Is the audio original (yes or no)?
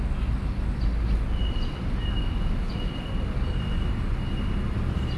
yes